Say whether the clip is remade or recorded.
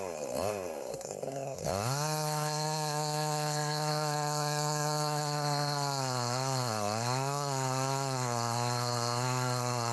remade